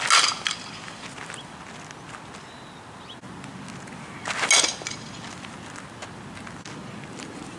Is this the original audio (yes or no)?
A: yes